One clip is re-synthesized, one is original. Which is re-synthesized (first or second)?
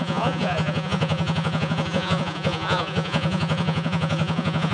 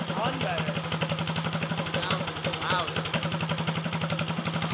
first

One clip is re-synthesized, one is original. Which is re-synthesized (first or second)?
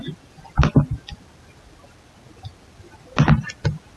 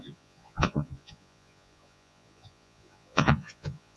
second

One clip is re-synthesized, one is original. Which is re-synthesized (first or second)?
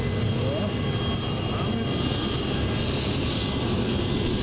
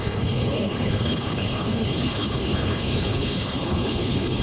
second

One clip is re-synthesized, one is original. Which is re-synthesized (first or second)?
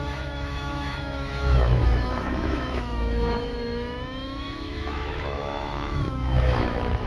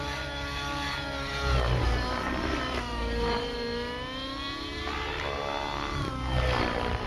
first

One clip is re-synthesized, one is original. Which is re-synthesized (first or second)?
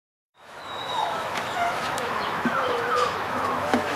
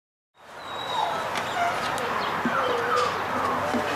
first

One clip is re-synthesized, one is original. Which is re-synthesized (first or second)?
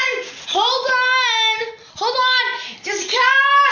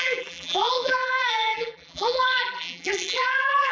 second